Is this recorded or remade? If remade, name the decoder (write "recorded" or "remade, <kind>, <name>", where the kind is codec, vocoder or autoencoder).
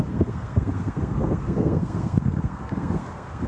remade, codec, SNAC